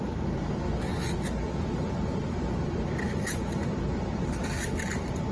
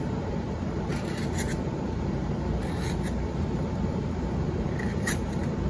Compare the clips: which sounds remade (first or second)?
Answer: second